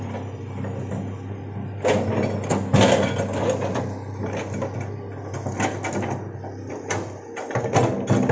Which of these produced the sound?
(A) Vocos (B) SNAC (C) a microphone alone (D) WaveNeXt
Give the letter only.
C